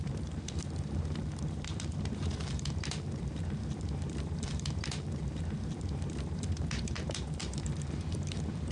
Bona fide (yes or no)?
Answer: no